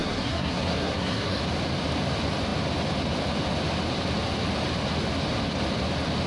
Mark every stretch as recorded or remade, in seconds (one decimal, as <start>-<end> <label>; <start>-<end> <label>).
0.0-1.4 remade; 1.4-6.3 recorded

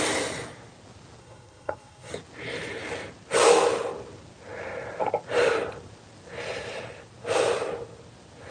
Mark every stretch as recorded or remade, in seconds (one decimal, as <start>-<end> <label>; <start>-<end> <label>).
0.0-1.2 recorded; 1.2-2.1 remade; 2.1-8.5 recorded

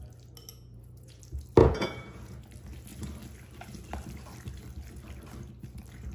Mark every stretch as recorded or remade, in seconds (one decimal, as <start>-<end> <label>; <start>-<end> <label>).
0.0-0.5 recorded; 0.5-1.2 remade; 1.2-1.6 recorded; 1.6-2.4 remade; 2.4-6.1 recorded

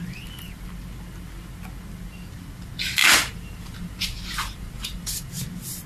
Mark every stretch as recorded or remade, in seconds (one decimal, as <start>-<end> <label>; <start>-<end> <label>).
0.0-3.0 recorded; 3.0-5.3 remade; 5.3-5.9 recorded

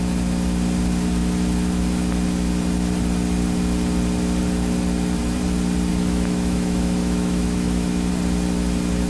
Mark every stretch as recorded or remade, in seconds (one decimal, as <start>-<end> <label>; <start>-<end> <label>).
0.0-5.9 recorded; 5.9-8.1 remade; 8.1-9.1 recorded

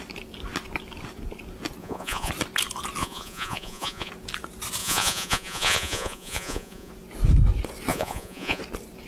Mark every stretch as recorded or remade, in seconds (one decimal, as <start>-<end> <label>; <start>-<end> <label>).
0.0-1.8 recorded; 1.8-2.3 remade; 2.3-3.0 recorded; 3.0-4.1 remade; 4.1-4.8 recorded; 4.8-6.9 remade; 6.9-7.9 recorded; 7.9-8.6 remade; 8.6-9.1 recorded